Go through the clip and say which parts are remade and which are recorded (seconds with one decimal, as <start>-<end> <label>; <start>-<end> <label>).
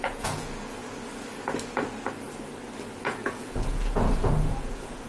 0.0-0.8 remade; 0.8-3.0 recorded; 3.0-5.1 remade